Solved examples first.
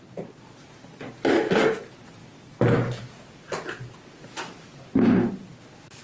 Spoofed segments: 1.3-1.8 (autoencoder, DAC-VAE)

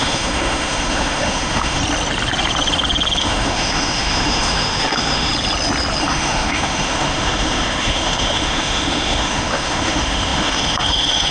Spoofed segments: 0.0-1.8 (autoencoder, DAC-VAE); 3.2-5.3; 6.0-11.3